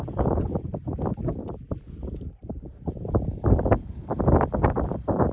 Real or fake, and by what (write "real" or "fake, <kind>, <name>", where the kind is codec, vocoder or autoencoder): fake, vocoder, BigVGAN v2